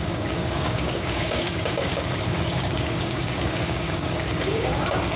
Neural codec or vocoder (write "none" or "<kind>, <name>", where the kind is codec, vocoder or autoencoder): codec, DAC